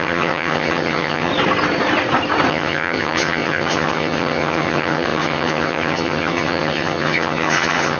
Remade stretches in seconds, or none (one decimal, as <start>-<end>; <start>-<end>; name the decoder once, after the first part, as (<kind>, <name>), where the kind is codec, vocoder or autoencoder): 0.0-1.3 (vocoder, HiFi-GAN); 2.5-8.0